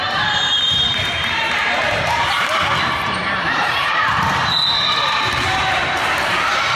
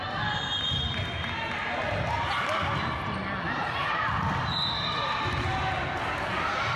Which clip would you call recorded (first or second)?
second